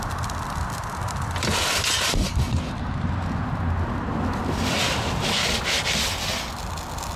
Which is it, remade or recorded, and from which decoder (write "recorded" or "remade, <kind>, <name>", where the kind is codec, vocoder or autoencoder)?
recorded